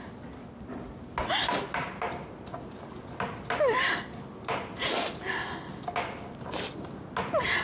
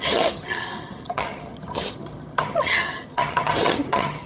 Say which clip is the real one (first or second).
first